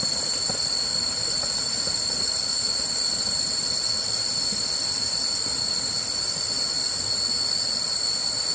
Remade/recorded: recorded